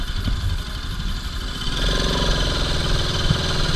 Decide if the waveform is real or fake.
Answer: real